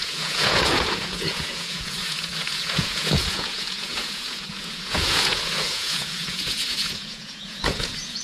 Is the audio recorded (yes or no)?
no